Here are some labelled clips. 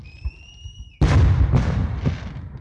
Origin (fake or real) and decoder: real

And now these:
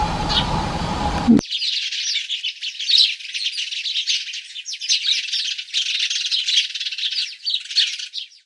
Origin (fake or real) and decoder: real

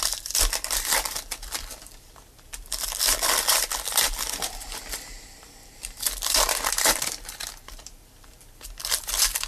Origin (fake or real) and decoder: fake, vocoder, BigVGAN v2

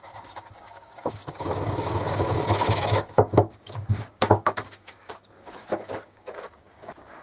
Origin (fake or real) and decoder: fake, codec, DAC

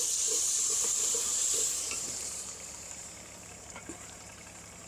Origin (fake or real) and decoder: fake, vocoder, BigVGAN v2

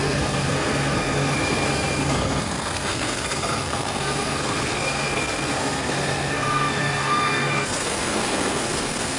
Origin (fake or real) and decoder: fake, codec, SNAC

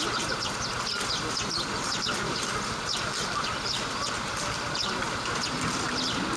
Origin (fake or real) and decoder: fake, vocoder, BigVGAN v2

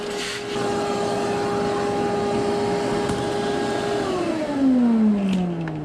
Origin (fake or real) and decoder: real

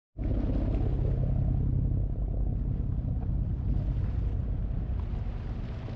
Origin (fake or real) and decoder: real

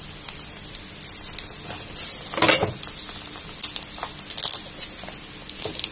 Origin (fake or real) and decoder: real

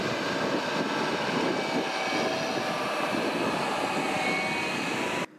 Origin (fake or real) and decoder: real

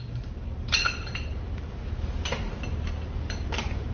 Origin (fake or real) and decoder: fake, vocoder, BigVGAN v2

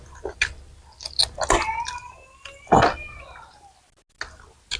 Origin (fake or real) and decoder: real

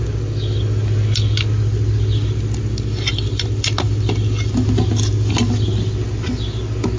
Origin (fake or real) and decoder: real